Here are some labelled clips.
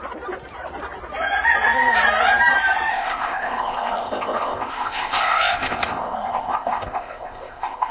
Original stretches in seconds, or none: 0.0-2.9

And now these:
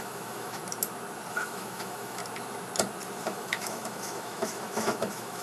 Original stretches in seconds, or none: 0.6-1.3; 2.2-3.2

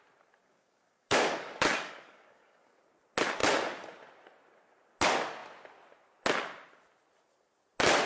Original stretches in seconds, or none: 0.0-0.4; 2.8-8.1

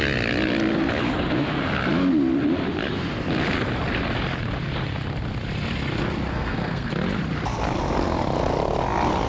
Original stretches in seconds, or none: 0.0-6.3; 6.9-9.3

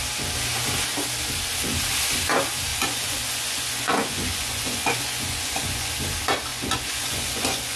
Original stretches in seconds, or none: 0.0-2.7; 5.9-6.5

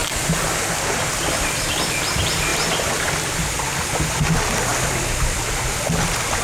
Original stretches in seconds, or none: 0.0-6.4

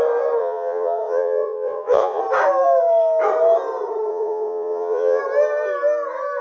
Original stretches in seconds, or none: 0.0-0.4; 2.2-4.1; 5.2-6.4